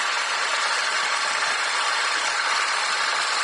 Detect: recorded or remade recorded